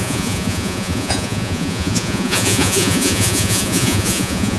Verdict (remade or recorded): remade